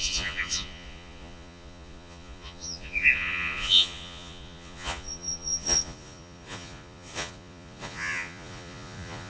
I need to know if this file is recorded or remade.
remade